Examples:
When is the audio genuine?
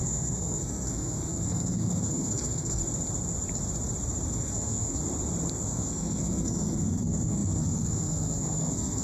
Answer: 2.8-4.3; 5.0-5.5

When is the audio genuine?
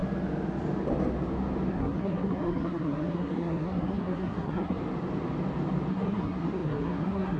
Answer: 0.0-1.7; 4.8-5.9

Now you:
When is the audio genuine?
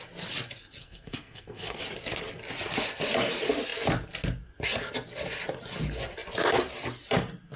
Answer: 0.0-0.8; 1.8-7.6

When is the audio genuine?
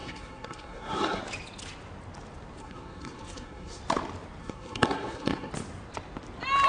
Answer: 1.2-2.6; 3.8-4.4; 5.5-6.7